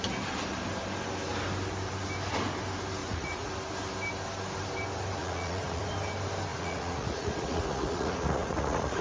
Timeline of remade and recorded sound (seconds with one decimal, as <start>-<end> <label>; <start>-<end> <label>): 0.0-3.0 recorded; 3.0-3.5 remade; 3.5-5.2 recorded; 5.2-5.8 remade; 5.8-6.5 recorded; 6.5-9.0 remade